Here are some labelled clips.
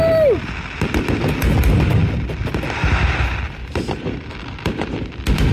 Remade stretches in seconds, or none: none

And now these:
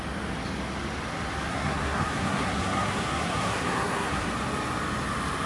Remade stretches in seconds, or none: 1.5-4.3 (codec, SNAC)

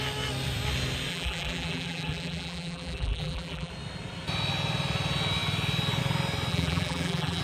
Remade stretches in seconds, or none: 1.1-3.7 (vocoder, BigVGAN v2); 6.5-7.4

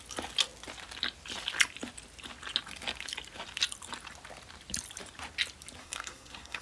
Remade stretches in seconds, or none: 5.8-6.6 (codec, SNAC)

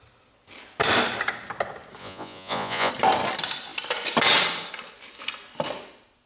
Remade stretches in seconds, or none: 2.0-2.9 (vocoder, Vocos)

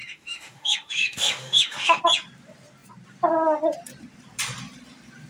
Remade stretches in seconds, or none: 0.0-2.0 (autoencoder, DAC-VAE)